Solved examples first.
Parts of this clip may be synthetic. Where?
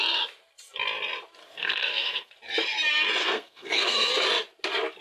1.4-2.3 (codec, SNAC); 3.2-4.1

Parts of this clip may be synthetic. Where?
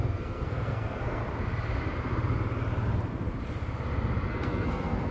0.0-1.2 (codec, SNAC); 4.3-5.1